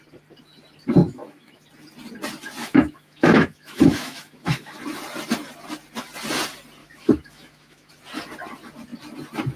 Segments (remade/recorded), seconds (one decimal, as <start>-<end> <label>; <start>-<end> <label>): 0.0-1.0 recorded; 1.0-1.6 remade; 1.6-2.6 recorded; 2.6-4.8 remade; 4.8-6.8 recorded; 6.8-7.9 remade; 7.9-9.6 recorded